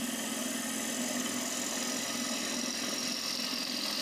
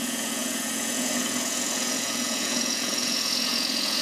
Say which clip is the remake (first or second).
second